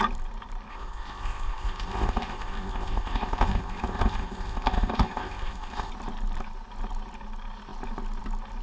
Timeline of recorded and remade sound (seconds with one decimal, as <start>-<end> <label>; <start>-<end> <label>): 0.0-0.7 recorded; 0.7-5.9 remade; 5.9-8.6 recorded